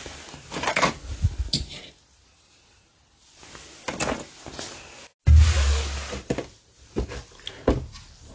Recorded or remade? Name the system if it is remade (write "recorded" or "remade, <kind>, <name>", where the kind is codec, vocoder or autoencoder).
recorded